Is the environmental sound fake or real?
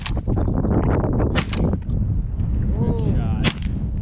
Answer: real